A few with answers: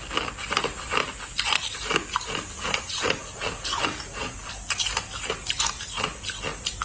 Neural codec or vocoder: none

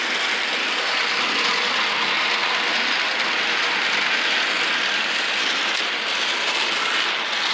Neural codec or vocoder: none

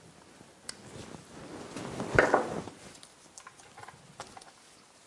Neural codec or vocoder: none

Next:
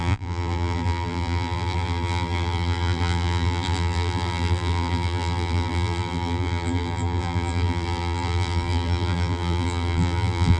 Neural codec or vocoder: vocoder, BigVGAN v2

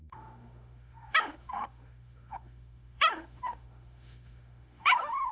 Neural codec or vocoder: autoencoder, DAC-VAE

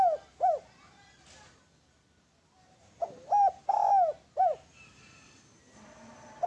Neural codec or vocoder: none